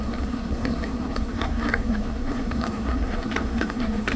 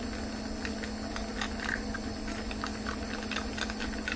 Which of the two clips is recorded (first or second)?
second